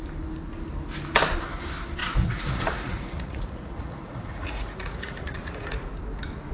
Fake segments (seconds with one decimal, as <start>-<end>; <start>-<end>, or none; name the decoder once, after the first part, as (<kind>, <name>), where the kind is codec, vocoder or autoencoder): 2.0-5.9 (vocoder, Vocos)